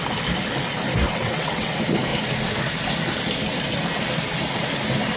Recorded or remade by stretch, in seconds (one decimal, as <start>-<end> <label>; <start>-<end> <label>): 0.0-1.1 recorded; 1.1-1.7 remade; 1.7-5.2 recorded